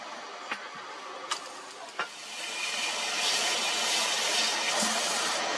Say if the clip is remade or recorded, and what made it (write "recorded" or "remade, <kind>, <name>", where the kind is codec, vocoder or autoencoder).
recorded